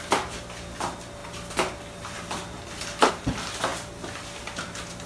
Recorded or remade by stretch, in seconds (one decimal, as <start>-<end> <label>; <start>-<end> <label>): 0.0-3.7 recorded; 3.7-4.3 remade; 4.3-5.1 recorded